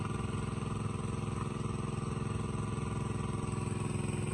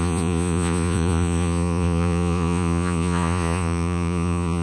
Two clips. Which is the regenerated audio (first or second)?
second